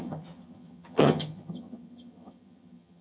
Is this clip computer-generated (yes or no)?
yes